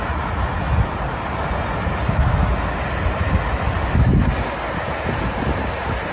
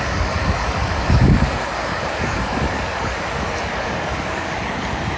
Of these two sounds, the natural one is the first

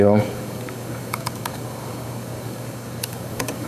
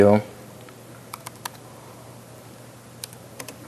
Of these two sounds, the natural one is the second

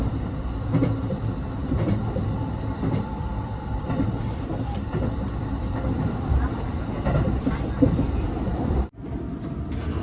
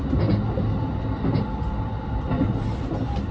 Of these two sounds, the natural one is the second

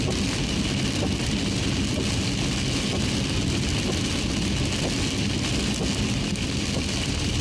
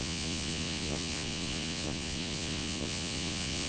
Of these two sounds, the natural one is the first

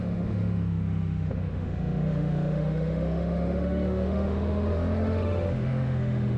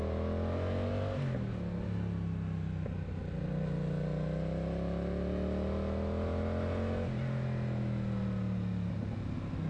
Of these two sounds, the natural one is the second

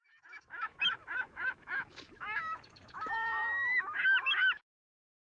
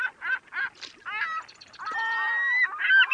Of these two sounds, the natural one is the second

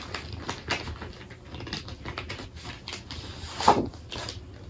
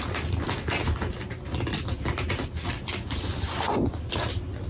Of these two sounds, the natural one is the first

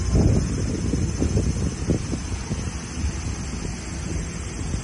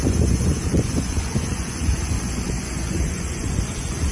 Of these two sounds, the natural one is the first